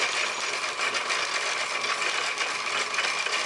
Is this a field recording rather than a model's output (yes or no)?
yes